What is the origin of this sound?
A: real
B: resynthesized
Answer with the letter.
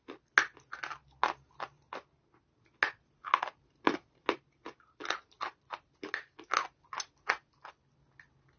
A